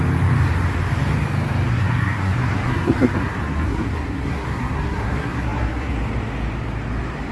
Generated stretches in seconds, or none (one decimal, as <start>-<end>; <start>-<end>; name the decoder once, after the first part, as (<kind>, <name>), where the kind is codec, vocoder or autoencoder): 1.7-5.9 (codec, SNAC)